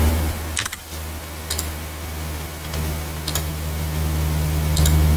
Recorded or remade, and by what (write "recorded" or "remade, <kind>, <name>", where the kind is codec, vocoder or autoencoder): recorded